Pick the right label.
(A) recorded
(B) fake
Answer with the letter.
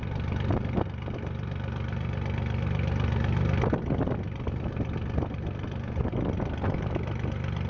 A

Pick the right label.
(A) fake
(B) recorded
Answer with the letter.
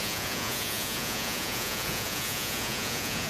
A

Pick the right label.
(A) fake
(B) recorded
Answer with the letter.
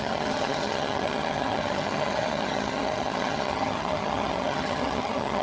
A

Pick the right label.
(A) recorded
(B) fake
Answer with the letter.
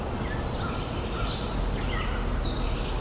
A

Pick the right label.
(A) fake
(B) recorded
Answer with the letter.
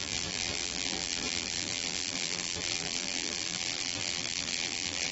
A